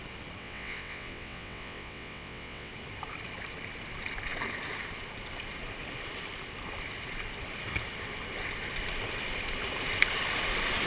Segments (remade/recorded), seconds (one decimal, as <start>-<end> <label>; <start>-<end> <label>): 0.0-0.4 recorded; 0.4-2.7 remade; 2.7-10.9 recorded